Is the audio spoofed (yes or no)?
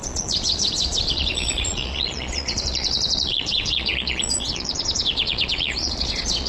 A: yes